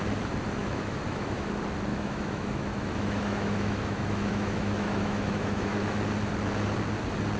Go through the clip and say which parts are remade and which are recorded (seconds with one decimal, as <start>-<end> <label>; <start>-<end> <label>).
0.0-0.6 recorded; 0.6-1.5 remade; 1.5-1.9 recorded; 1.9-6.0 remade; 6.0-7.4 recorded